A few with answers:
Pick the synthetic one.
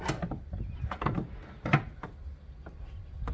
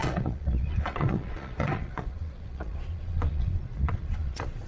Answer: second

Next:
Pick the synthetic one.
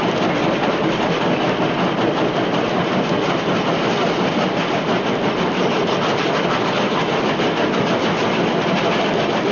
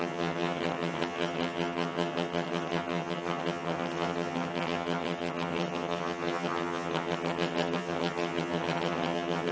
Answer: second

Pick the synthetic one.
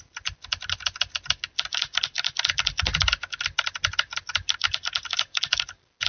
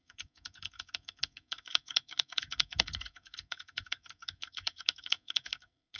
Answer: second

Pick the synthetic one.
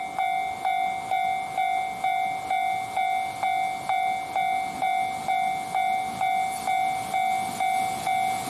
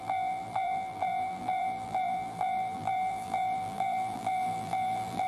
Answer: second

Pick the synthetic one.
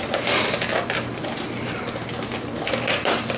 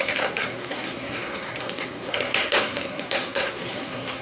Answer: second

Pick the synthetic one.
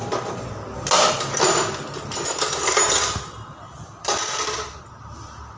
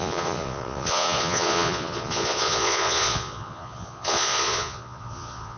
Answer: second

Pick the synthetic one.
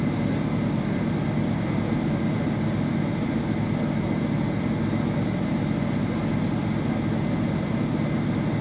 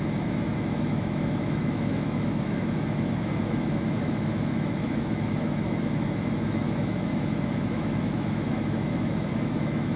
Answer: second